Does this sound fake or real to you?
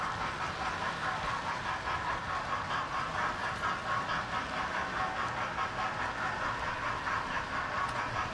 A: real